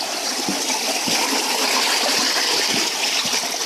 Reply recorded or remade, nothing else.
recorded